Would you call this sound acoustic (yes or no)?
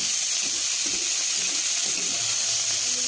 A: yes